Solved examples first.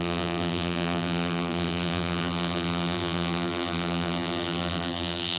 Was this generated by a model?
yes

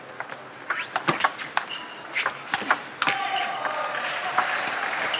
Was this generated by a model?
no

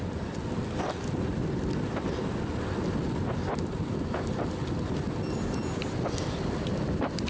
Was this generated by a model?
no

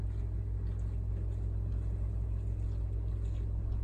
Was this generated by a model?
no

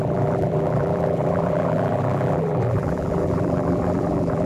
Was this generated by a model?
yes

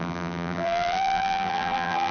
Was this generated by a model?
yes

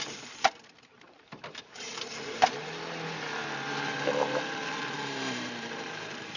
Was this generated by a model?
yes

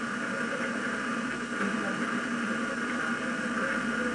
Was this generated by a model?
yes